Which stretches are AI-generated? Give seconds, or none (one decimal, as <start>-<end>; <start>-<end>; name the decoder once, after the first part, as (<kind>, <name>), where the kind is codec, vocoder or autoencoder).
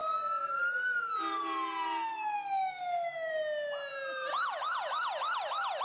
2.1-3.3 (autoencoder, DAC-VAE)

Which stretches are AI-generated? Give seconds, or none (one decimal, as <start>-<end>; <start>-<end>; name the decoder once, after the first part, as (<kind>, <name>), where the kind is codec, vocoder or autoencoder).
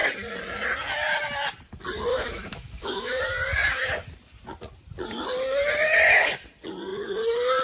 2.1-3.2 (autoencoder, DAC-VAE)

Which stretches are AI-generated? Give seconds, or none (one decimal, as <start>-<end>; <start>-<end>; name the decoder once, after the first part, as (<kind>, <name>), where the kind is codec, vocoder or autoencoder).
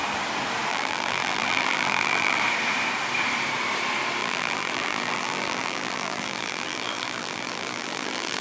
0.7-2.4 (vocoder, BigVGAN v2); 4.2-8.4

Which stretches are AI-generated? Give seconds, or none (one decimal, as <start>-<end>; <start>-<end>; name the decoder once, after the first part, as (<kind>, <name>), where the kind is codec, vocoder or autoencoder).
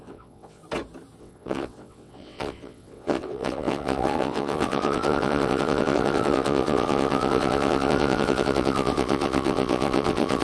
0.0-0.6 (vocoder, WaveNeXt); 1.2-10.4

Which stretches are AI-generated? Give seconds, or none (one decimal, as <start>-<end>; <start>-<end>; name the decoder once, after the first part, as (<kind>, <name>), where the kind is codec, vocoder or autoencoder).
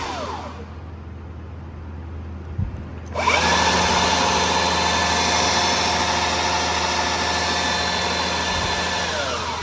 none